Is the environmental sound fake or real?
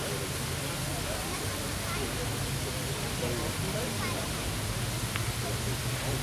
real